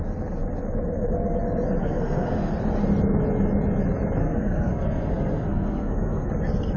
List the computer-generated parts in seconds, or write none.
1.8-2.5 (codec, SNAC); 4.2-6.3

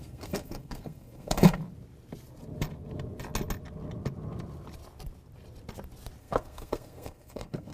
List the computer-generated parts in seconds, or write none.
0.0-1.6 (codec, SNAC); 6.2-7.7

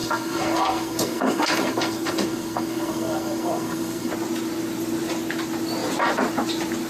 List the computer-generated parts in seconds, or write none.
0.0-4.1 (codec, SNAC)

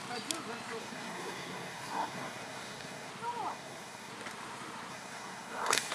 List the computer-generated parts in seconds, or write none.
0.8-3.1 (codec, SNAC); 3.5-4.1; 4.9-5.9

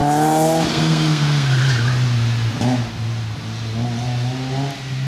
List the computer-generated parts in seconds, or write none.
0.7-1.6 (codec, SNAC)

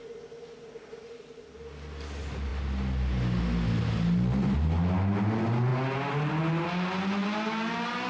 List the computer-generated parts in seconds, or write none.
none

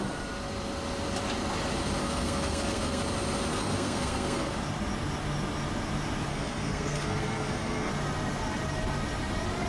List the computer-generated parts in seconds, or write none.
2.0-3.0 (codec, SNAC); 3.5-4.5; 6.3-7.9

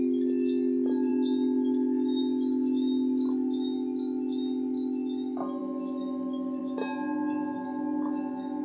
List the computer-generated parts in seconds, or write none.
none